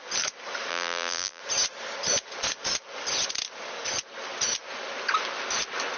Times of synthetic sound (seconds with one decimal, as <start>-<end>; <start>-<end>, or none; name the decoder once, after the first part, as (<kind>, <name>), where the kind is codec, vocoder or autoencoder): 0.7-1.4 (vocoder, BigVGAN v2)